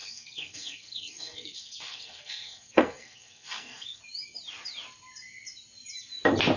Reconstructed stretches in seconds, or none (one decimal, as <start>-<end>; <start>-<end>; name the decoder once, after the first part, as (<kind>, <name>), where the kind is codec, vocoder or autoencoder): 0.0-4.0 (codec, SNAC)